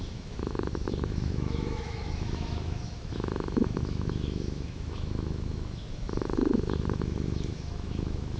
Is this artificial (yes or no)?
yes